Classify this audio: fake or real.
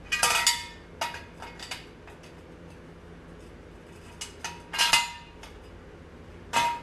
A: real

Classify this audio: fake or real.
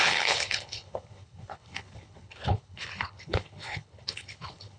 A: fake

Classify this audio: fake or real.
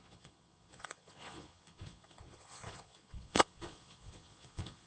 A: fake